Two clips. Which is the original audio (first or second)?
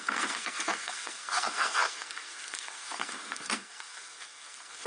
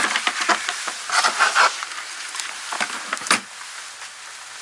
second